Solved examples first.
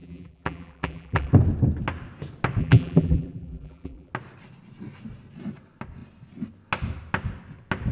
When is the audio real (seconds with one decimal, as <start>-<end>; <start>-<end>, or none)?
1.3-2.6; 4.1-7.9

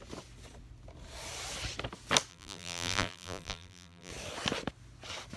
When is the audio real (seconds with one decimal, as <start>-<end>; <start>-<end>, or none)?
0.0-2.3; 4.1-5.4

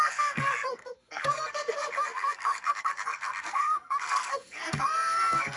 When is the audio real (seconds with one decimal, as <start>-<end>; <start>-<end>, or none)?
none

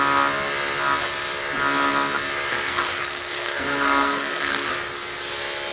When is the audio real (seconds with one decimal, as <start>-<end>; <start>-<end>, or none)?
0.0-2.5; 4.7-5.7

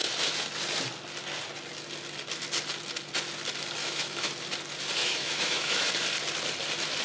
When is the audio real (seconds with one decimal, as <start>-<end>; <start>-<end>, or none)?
0.0-3.8; 4.3-5.0; 5.9-7.0

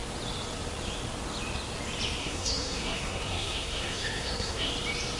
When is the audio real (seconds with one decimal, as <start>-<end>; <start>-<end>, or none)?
0.0-2.2; 4.7-5.2

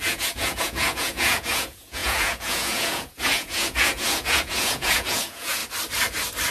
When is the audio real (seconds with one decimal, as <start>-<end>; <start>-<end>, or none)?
5.6-6.5